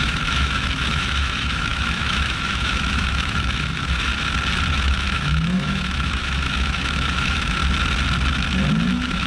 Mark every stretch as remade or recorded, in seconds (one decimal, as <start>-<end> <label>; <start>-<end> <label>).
0.0-4.1 remade; 4.1-4.7 recorded; 4.7-7.6 remade; 7.6-8.9 recorded; 8.9-9.3 remade